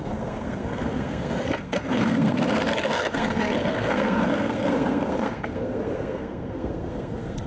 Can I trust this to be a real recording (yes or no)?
no